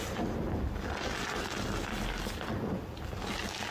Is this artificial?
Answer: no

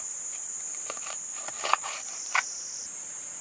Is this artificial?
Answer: yes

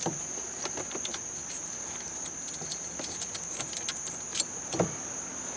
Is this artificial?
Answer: no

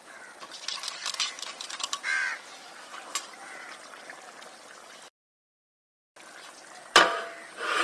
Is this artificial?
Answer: yes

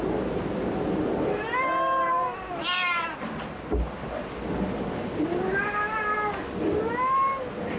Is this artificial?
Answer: no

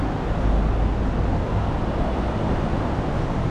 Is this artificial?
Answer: no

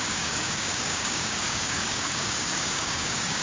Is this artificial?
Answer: yes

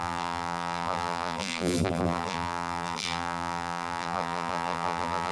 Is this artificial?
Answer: yes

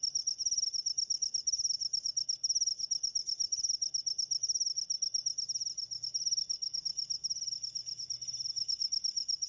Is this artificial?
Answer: no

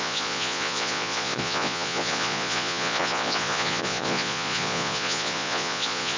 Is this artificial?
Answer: yes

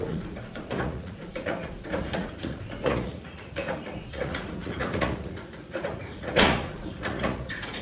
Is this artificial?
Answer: yes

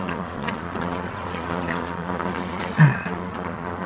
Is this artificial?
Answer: yes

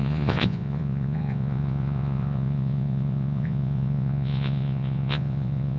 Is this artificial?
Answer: yes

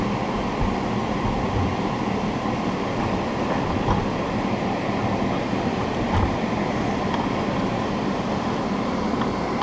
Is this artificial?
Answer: yes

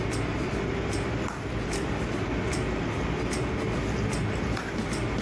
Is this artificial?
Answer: no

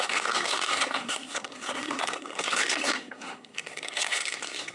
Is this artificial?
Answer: yes